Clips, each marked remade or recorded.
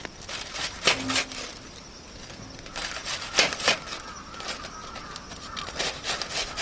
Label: recorded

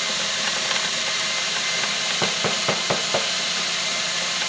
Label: recorded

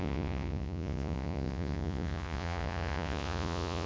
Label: remade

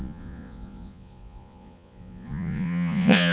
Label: remade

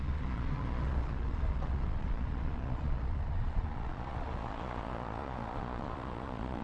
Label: remade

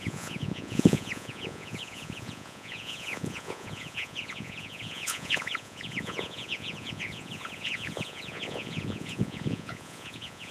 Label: remade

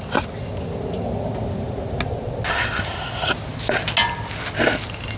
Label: recorded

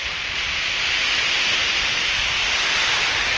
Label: recorded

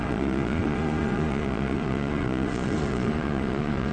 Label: remade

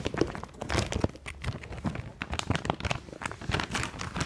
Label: recorded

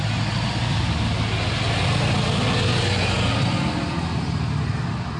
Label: recorded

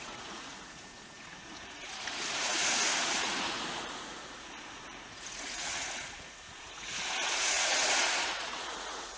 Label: remade